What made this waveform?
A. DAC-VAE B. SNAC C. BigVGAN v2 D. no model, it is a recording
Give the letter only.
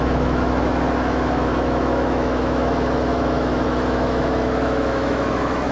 A